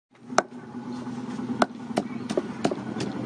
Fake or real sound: real